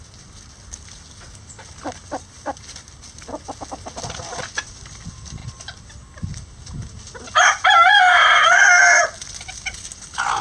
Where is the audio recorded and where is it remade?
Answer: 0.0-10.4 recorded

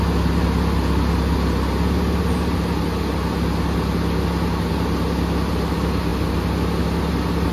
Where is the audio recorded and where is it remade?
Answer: 0.0-7.5 recorded

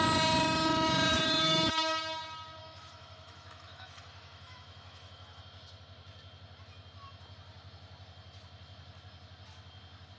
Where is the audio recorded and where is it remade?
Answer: 0.0-1.1 recorded; 1.1-1.7 remade; 1.7-2.6 recorded; 2.6-5.4 remade; 5.4-10.2 recorded